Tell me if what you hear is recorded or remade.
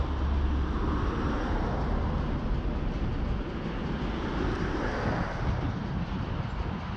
recorded